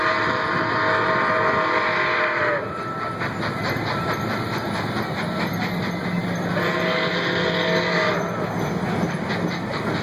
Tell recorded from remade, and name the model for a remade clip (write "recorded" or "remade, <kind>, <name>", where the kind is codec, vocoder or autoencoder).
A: recorded